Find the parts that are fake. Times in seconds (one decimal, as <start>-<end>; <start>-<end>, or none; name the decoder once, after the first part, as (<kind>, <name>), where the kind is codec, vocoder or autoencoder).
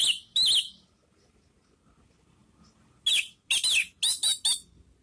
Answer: none